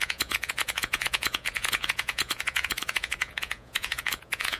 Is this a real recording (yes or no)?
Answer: no